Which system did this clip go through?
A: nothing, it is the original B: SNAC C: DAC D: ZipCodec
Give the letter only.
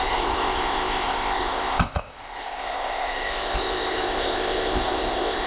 D